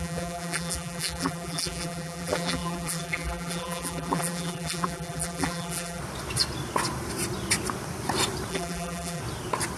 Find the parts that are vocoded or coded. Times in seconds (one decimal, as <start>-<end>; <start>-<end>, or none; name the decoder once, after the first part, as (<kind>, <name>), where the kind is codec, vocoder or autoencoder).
0.0-6.0 (vocoder, BigVGAN v2); 8.5-9.2

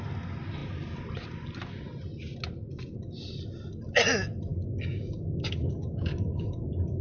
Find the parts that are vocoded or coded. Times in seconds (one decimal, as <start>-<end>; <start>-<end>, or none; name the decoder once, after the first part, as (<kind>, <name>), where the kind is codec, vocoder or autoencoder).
4.5-7.0 (codec, DAC)

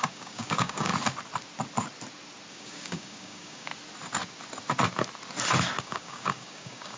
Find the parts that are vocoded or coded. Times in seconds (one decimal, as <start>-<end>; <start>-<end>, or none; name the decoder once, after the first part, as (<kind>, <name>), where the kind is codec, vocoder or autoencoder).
0.0-0.9 (codec, DAC); 2.5-3.7; 5.8-7.0

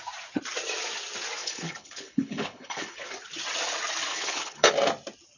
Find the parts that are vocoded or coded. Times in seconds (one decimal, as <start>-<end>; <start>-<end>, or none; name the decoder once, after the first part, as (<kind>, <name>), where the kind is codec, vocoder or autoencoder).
1.4-3.1 (codec, HILCodec); 4.1-4.7